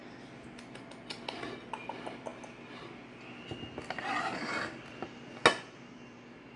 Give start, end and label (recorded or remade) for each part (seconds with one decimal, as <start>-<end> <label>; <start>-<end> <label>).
0.0-6.6 recorded